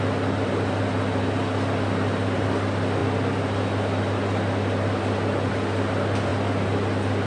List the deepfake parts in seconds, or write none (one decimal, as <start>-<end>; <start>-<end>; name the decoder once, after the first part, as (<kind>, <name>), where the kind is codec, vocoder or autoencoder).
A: none